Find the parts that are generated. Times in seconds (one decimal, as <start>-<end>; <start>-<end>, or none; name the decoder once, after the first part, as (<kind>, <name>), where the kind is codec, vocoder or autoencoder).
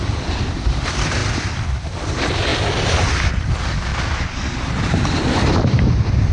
0.0-1.2 (vocoder, BigVGAN v2); 1.9-2.5; 3.3-3.9; 5.2-6.3